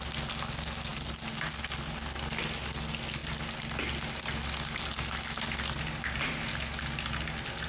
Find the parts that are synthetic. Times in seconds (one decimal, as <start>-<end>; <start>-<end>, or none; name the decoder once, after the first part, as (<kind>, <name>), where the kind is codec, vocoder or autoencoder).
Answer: none

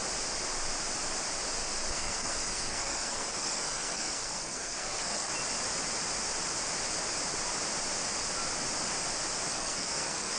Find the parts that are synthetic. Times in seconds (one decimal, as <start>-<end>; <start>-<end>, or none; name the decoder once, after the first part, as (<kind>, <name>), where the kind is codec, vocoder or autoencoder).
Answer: 1.9-5.3 (codec, SNAC); 9.5-10.4

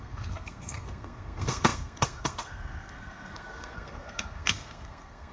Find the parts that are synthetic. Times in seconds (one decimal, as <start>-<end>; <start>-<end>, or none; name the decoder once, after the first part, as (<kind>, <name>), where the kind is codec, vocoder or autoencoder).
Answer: 0.0-5.3 (codec, SNAC)